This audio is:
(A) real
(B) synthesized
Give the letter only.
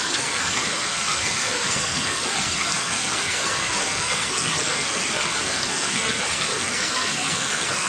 B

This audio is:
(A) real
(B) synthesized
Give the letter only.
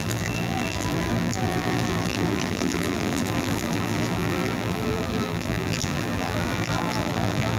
B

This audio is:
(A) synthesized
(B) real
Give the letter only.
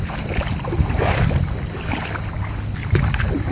B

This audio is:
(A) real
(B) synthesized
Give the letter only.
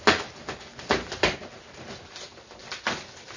A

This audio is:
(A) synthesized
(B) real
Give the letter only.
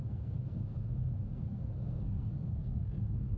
A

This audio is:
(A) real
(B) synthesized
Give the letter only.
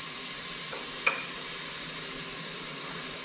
A